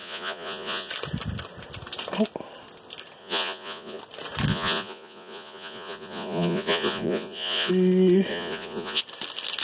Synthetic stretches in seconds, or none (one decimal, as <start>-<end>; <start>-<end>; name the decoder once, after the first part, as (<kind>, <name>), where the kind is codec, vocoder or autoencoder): 0.0-0.9 (vocoder, Vocos); 3.2-4.0; 4.5-7.7; 8.3-9.0